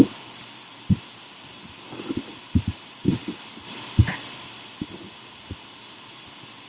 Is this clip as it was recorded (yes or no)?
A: no